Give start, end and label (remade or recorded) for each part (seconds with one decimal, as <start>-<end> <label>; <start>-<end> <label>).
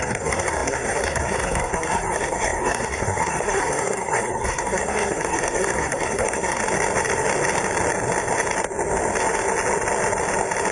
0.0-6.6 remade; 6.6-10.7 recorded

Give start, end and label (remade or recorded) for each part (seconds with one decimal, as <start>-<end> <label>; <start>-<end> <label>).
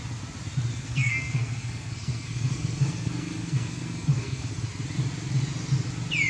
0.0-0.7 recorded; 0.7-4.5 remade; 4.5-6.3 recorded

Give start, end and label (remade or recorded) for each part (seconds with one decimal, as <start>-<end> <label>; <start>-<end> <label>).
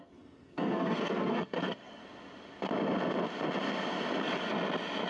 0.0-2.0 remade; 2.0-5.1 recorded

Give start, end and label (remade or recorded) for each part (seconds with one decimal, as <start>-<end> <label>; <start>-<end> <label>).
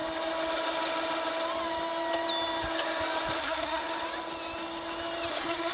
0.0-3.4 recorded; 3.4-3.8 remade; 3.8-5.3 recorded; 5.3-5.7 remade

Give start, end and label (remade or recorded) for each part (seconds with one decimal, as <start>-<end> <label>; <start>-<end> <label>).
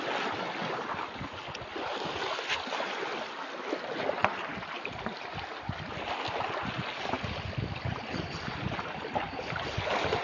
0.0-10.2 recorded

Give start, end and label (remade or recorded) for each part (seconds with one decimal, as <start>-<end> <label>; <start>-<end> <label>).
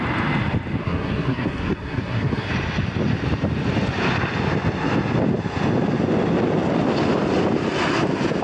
0.0-0.8 recorded; 0.8-2.5 remade; 2.5-8.4 recorded